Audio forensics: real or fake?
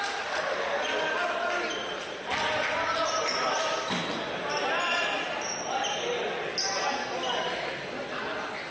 real